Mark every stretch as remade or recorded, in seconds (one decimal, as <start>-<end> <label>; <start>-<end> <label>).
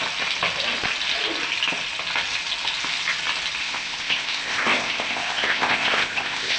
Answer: 0.0-3.6 recorded; 3.6-6.6 remade